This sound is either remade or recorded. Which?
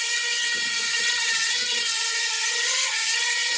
remade